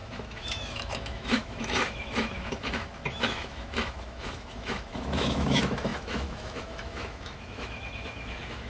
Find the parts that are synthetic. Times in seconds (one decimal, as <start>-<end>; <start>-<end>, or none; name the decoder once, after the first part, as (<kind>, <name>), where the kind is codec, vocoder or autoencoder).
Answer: 0.0-8.7 (autoencoder, DAC-VAE)